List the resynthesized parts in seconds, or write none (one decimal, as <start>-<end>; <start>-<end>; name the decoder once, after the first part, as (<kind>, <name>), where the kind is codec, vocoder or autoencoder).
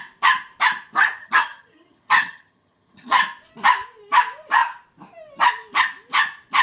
1.2-3.2 (vocoder, HiFi-GAN)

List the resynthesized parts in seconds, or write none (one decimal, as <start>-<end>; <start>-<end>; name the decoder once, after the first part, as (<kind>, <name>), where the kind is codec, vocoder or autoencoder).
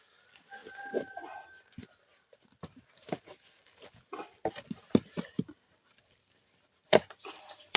0.0-7.8 (vocoder, BigVGAN v2)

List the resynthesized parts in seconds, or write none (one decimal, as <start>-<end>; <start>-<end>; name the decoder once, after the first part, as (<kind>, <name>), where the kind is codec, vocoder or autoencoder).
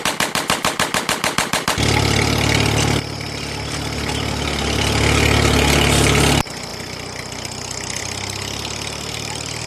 none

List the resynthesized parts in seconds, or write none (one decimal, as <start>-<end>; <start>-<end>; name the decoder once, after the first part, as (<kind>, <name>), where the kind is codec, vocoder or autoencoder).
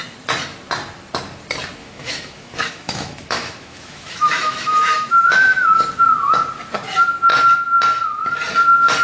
1.8-5.8 (autoencoder, DAC-VAE)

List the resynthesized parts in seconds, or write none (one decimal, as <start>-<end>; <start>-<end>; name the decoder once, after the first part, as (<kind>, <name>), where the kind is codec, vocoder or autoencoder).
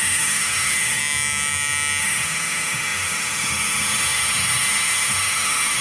0.0-1.0 (autoencoder, DAC-VAE); 2.0-5.8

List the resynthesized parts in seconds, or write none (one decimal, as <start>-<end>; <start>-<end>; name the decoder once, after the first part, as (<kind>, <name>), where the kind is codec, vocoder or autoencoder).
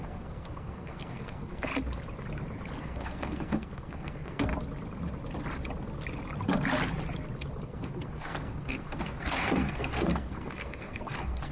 0.0-1.7 (codec, SNAC); 2.8-4.5; 7.6-11.5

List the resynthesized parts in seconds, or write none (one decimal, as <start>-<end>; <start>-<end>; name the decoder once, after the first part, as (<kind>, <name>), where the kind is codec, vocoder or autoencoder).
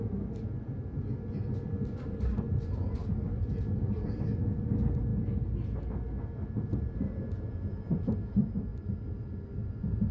none